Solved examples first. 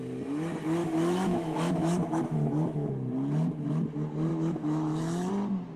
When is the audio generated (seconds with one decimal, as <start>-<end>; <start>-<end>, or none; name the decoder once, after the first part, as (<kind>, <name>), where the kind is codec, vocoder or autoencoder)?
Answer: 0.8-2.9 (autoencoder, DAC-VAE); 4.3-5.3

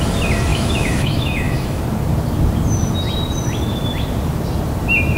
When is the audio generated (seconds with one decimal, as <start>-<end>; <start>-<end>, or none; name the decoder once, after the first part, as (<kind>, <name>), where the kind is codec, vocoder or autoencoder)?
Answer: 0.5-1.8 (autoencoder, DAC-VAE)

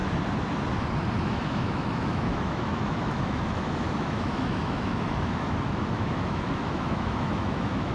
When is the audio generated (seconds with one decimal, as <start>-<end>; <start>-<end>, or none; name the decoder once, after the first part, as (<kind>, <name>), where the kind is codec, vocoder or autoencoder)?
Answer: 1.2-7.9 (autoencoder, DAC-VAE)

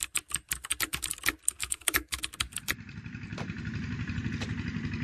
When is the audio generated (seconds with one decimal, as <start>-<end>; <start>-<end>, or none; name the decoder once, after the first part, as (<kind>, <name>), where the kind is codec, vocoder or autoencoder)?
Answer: 1.6-2.2 (autoencoder, DAC-VAE)

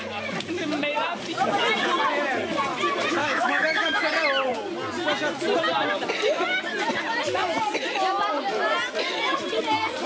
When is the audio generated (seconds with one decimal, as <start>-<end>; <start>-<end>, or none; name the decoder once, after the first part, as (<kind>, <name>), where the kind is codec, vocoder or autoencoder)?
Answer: 3.2-4.1 (autoencoder, DAC-VAE)